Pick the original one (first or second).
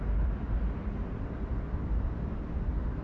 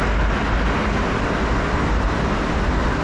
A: second